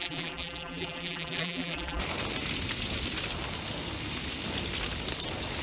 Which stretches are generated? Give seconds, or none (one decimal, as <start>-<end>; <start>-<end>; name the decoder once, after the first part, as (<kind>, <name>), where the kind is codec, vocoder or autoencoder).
0.0-2.0 (vocoder, BigVGAN v2)